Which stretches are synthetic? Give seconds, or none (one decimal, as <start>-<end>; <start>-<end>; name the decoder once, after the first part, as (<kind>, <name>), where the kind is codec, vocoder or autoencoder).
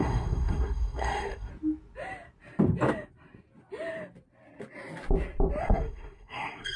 0.0-1.5 (codec, SNAC); 5.6-6.8